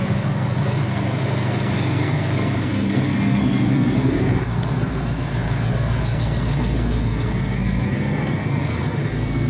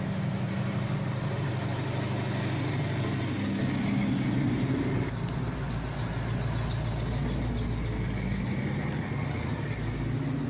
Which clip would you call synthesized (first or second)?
first